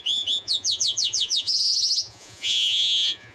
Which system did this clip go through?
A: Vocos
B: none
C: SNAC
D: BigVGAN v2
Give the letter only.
A